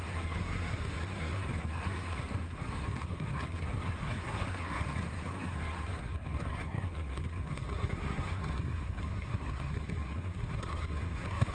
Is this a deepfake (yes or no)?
yes